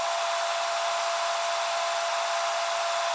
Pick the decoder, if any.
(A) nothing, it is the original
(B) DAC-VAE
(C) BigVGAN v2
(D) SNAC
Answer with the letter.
A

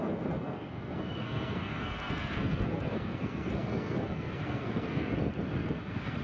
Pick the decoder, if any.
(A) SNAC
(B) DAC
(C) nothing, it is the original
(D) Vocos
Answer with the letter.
A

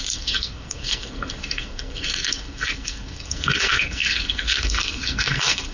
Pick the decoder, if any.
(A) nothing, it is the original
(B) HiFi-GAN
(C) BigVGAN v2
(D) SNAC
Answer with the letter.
D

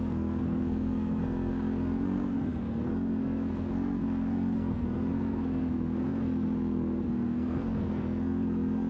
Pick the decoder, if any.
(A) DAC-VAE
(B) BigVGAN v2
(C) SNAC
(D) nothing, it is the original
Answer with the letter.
C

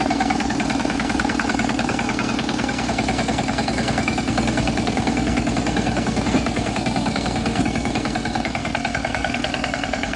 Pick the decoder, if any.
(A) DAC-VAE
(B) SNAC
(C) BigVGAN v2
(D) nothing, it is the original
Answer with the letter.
B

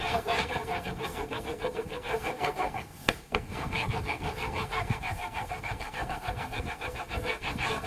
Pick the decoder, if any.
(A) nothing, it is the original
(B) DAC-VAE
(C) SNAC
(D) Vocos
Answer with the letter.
C